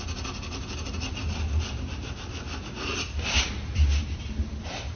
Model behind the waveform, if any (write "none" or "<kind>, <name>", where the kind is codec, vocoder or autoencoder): none